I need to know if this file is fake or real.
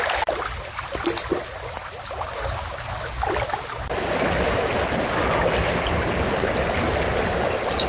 real